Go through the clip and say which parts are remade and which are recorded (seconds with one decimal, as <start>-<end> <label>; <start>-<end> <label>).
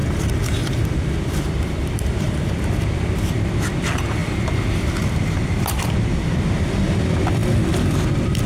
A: 0.0-3.5 remade; 3.5-4.2 recorded; 4.2-5.5 remade; 5.5-7.4 recorded; 7.4-8.5 remade